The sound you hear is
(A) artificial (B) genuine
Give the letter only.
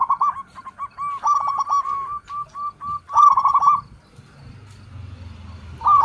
B